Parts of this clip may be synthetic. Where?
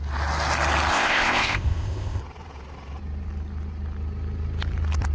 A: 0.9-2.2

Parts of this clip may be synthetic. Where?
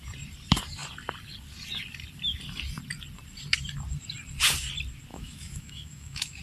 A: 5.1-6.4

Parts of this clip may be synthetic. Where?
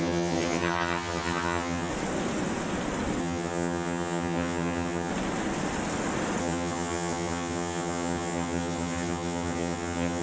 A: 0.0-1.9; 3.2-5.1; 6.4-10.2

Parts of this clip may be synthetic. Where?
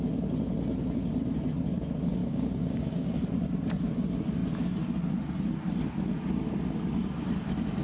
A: 2.2-3.2